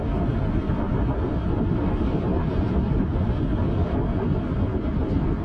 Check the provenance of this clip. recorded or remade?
recorded